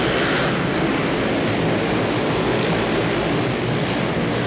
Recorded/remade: recorded